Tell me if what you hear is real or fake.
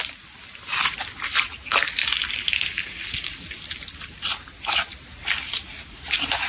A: real